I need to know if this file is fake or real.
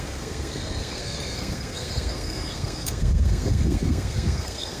fake